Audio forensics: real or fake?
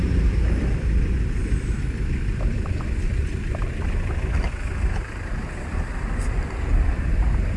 fake